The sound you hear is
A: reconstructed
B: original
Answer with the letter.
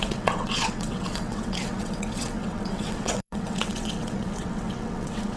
A